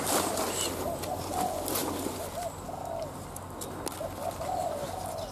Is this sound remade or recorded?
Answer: recorded